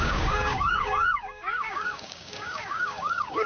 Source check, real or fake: fake